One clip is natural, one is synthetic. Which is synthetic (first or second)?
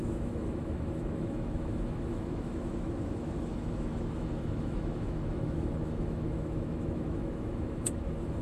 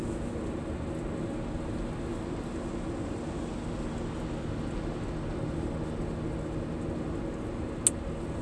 first